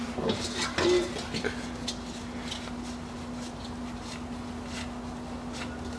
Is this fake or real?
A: real